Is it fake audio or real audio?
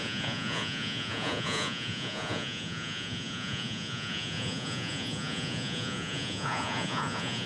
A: fake